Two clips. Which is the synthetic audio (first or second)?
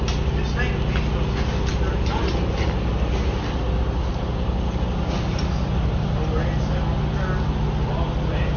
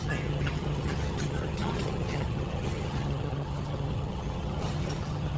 second